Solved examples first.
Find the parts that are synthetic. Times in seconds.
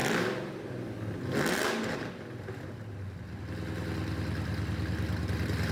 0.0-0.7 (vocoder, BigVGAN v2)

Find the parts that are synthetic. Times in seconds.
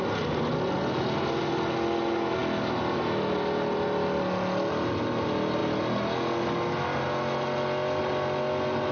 none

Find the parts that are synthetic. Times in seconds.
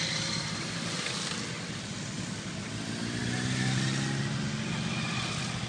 none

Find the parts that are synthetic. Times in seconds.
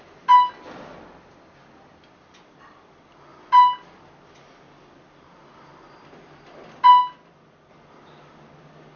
none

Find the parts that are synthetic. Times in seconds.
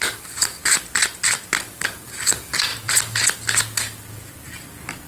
0.0-0.6 (codec, DAC); 1.6-2.7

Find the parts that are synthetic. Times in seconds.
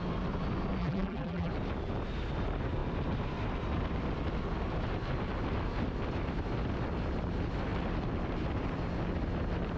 0.8-1.5 (vocoder, BigVGAN v2)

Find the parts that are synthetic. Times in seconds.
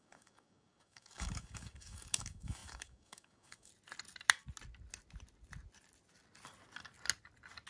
0.0-3.7 (codec, DAC)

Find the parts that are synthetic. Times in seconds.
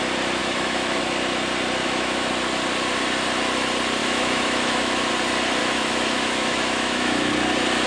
0.4-1.0 (autoencoder, DAC-VAE); 1.8-2.3; 4.0-5.1; 5.6-7.3